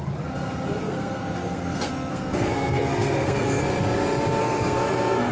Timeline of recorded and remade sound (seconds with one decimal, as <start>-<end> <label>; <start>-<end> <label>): 0.0-0.8 recorded; 0.8-3.6 remade; 3.6-4.4 recorded; 4.4-5.3 remade